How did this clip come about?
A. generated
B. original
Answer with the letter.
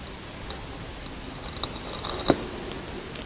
B